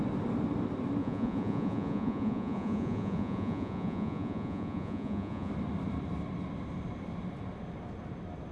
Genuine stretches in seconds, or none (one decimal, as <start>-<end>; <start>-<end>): 0.0-1.0; 5.5-8.5